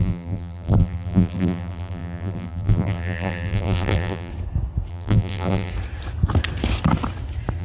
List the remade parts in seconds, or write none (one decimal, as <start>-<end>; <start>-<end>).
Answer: 0.0-4.3; 4.9-5.7